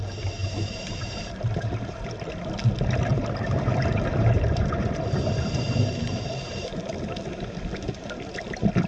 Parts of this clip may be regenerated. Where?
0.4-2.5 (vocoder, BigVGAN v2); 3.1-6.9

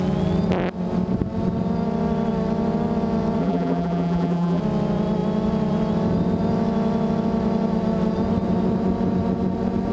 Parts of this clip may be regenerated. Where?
3.4-4.6 (vocoder, BigVGAN v2)